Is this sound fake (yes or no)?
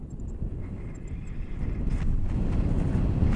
no